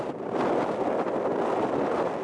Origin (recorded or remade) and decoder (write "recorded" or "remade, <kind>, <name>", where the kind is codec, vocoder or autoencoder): recorded